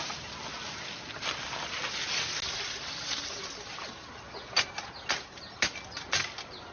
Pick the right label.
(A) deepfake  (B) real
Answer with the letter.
B